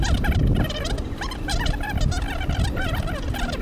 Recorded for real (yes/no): yes